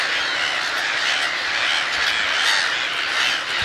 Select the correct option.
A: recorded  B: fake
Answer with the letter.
A